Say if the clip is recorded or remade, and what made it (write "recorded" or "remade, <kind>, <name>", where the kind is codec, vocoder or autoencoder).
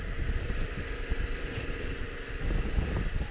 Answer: recorded